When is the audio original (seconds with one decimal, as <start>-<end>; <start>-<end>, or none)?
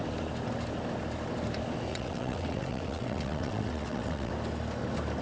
0.0-1.9; 4.3-5.2